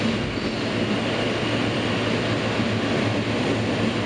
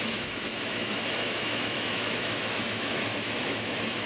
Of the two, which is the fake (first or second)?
second